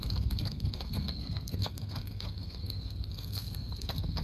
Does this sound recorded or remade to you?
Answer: remade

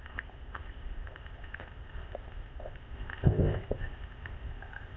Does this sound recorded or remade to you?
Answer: remade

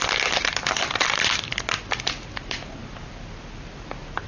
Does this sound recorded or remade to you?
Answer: recorded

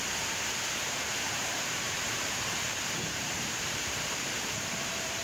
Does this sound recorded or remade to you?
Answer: remade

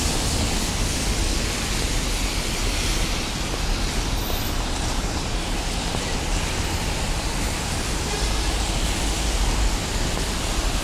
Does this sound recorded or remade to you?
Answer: recorded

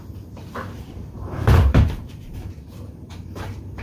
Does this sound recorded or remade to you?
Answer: remade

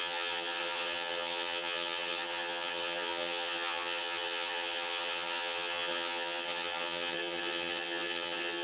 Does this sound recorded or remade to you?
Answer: remade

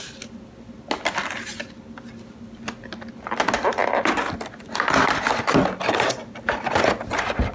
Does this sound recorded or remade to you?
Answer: recorded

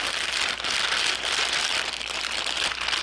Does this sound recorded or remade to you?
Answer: recorded